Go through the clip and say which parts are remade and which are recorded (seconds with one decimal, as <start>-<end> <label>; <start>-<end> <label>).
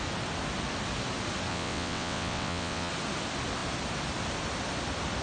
0.0-1.5 recorded; 1.5-2.9 remade; 2.9-5.2 recorded